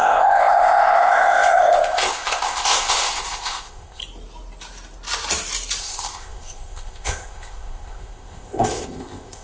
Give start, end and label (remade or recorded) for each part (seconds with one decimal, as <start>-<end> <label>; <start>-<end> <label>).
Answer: 0.0-4.0 remade; 4.0-5.8 recorded; 5.8-9.4 remade